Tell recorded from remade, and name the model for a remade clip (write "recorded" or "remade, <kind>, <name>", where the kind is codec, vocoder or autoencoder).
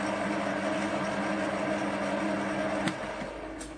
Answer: recorded